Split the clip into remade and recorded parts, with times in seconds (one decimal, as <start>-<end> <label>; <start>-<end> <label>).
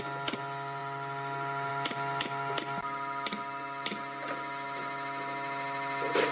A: 0.0-6.3 recorded